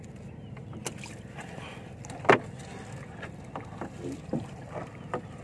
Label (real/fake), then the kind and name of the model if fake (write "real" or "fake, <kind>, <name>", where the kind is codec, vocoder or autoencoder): real